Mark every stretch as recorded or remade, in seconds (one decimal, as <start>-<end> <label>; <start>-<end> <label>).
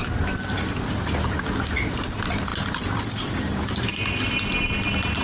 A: 0.0-5.2 recorded